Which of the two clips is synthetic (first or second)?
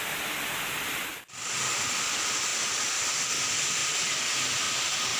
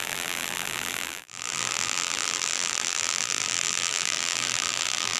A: second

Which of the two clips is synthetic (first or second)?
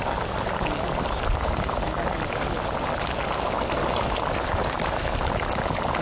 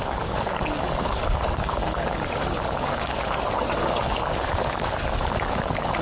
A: second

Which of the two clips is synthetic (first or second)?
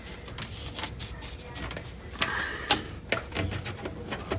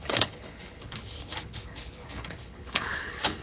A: second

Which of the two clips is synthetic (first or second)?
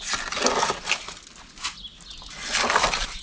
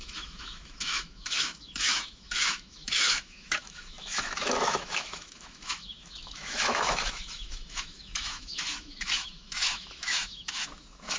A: second